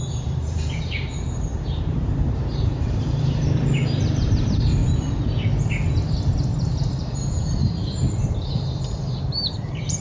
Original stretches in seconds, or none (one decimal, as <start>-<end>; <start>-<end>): 4.8-6.7